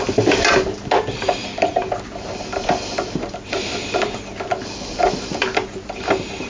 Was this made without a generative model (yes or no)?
yes